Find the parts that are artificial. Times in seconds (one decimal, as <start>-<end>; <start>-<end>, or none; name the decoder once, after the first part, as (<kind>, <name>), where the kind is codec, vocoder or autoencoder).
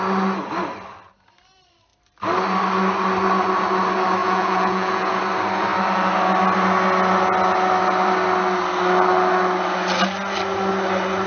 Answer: 4.2-5.2 (vocoder, Vocos)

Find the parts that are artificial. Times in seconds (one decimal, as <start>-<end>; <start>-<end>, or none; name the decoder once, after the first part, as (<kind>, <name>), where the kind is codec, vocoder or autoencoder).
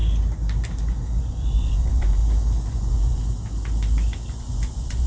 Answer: 1.2-2.2 (vocoder, Vocos); 2.7-3.2; 4.3-5.1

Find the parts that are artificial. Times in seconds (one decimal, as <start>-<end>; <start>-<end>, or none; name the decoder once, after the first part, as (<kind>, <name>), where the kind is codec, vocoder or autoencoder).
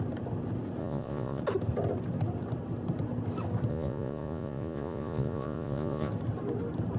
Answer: 0.8-1.4 (vocoder, Vocos); 3.7-6.1